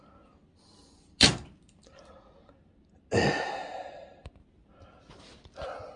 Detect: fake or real real